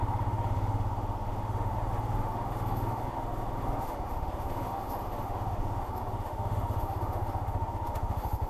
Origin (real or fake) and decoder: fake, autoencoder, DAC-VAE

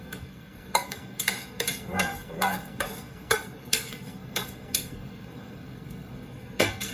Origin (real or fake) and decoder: fake, codec, SNAC